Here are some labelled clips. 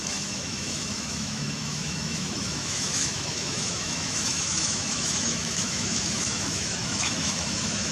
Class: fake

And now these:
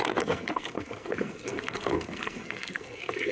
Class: fake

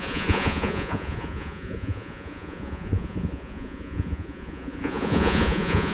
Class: fake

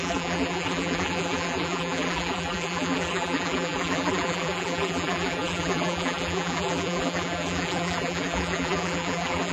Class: fake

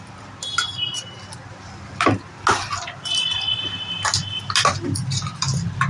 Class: real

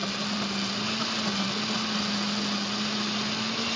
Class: real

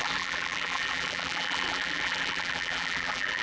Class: fake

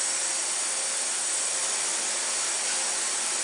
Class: real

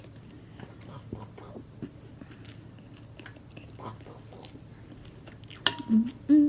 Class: real